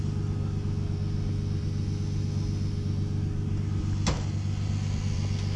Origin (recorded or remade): recorded